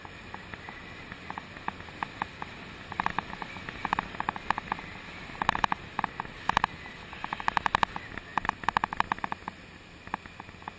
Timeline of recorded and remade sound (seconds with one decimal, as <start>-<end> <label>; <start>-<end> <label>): 0.0-10.8 recorded